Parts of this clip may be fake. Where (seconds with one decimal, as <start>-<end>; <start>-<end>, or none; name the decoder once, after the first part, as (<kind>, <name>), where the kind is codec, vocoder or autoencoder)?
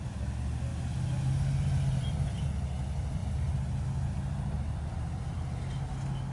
none